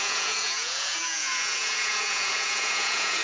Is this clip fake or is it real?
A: fake